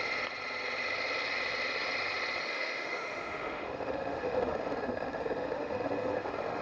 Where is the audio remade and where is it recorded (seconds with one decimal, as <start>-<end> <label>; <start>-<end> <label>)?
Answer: 0.0-2.4 recorded; 2.4-6.6 remade